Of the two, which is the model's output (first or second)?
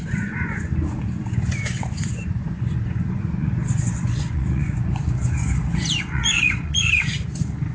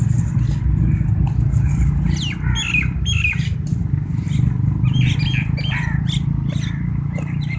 first